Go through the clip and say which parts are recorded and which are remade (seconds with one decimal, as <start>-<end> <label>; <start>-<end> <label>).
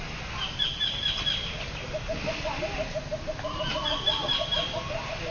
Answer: 0.0-5.3 recorded